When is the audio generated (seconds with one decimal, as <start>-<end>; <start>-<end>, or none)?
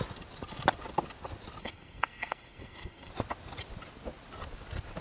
1.6-3.1